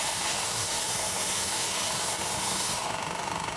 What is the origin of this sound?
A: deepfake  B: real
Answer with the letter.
A